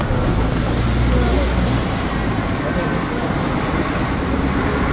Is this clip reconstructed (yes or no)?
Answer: no